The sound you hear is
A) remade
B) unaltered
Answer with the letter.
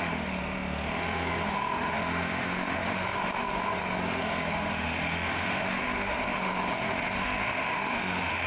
A